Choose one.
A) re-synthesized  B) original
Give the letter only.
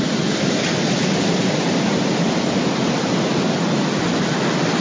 B